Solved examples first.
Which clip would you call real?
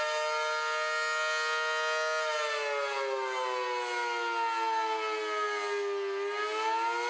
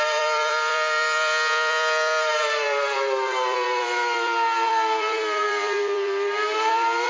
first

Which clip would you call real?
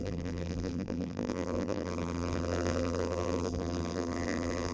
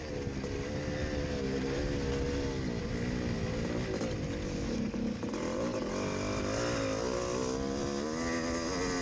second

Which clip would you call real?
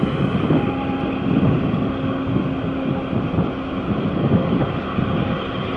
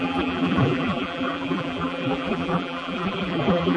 first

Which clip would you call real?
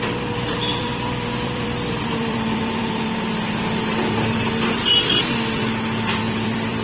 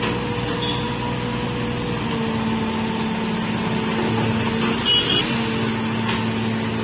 second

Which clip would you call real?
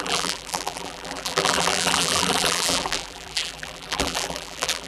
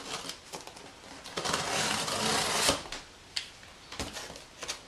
second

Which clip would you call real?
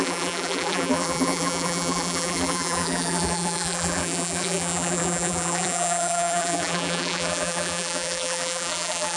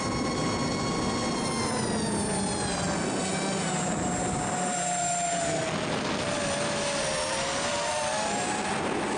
second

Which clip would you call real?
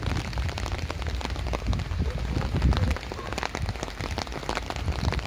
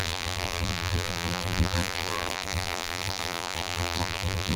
first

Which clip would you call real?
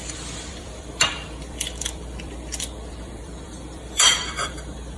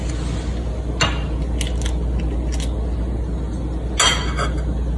second